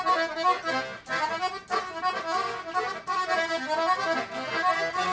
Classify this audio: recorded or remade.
recorded